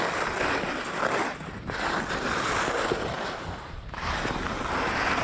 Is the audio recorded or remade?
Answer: recorded